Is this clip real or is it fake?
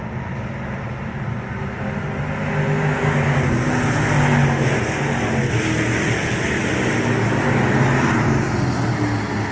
real